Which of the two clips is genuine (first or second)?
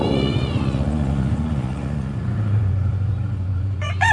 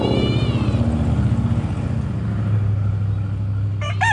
second